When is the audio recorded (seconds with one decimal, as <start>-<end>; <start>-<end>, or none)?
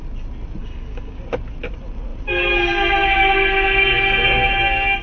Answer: 0.0-0.6; 1.2-5.0